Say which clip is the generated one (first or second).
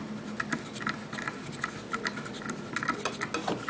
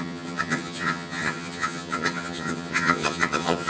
second